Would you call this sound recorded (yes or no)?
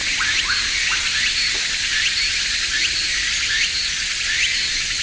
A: yes